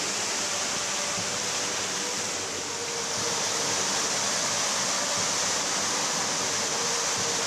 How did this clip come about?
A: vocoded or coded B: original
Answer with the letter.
B